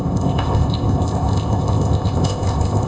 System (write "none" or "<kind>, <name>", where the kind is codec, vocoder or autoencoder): codec, ZipCodec